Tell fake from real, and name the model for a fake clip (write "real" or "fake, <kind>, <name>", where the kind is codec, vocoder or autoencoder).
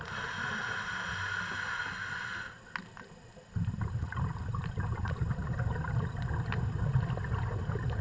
real